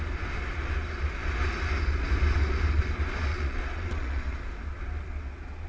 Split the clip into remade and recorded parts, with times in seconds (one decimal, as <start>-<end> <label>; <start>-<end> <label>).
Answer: 0.0-3.3 recorded; 3.3-4.2 remade; 4.2-5.7 recorded